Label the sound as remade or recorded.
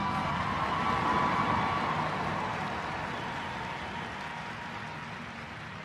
recorded